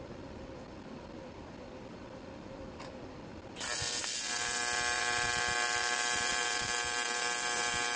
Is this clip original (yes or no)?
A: yes